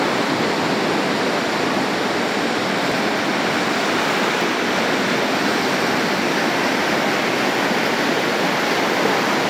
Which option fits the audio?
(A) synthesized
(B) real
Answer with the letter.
B